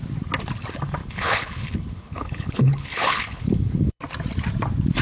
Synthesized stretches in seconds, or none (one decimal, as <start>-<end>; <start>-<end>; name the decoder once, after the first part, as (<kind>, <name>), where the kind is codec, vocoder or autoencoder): 1.0-4.0 (codec, HILCodec)